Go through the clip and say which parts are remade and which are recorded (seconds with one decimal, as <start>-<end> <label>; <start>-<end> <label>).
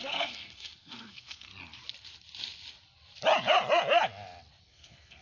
0.0-1.5 remade; 1.5-4.6 recorded; 4.6-5.2 remade